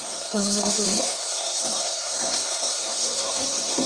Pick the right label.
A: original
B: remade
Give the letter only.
B